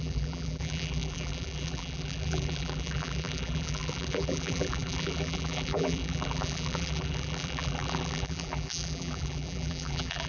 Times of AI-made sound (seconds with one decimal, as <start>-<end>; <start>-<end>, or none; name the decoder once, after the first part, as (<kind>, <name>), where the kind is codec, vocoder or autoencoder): 0.0-10.3 (vocoder, BigVGAN v2)